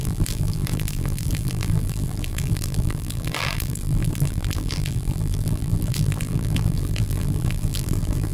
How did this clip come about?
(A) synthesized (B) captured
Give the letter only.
A